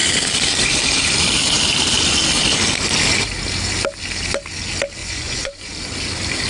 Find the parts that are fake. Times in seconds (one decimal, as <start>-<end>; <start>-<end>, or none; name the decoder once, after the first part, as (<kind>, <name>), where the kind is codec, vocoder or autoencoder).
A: 5.0-5.7 (vocoder, Vocos)